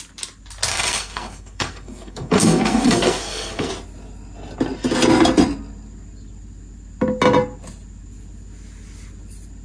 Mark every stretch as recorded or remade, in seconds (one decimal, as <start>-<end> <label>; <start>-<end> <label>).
0.0-0.7 recorded; 0.7-3.7 remade; 3.7-9.6 recorded